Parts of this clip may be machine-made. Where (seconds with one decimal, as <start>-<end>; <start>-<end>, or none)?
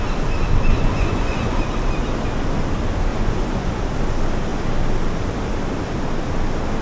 0.7-1.6; 3.1-3.8